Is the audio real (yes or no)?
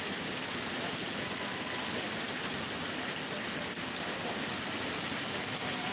yes